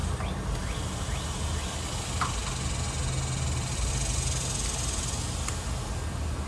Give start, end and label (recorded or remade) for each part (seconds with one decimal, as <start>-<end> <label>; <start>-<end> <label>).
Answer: 0.0-6.5 recorded